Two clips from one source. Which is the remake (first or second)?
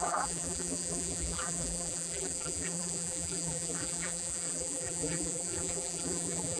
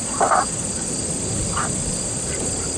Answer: first